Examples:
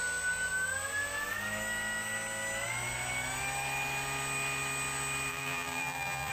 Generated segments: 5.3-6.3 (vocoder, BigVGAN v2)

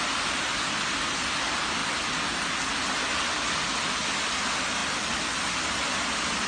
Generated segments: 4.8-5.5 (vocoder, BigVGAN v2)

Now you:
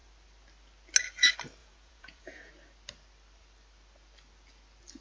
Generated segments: 1.6-2.5 (vocoder, Vocos)

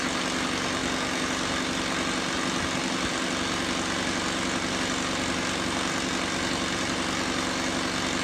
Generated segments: none

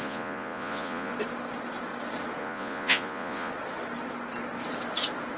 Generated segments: 0.0-1.1 (vocoder, Vocos); 2.4-3.5

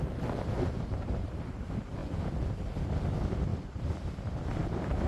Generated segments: 0.0-2.0 (vocoder, BigVGAN v2); 2.5-5.1